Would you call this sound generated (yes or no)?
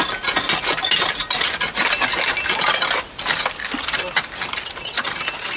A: no